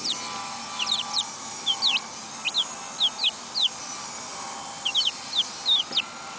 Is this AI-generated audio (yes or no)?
no